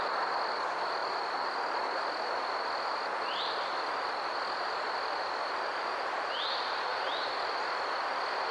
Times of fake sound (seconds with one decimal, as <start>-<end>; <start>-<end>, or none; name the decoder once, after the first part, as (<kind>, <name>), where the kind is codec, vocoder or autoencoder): 0.0-1.0 (vocoder, BigVGAN v2); 3.5-8.5